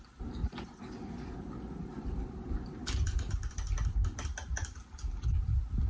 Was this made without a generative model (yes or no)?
no